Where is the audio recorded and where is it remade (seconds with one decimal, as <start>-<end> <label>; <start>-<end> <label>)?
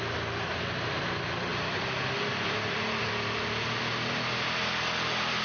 0.0-5.4 recorded